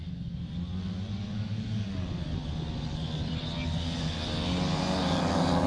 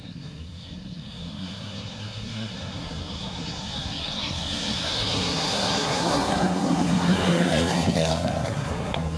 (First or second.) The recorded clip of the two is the first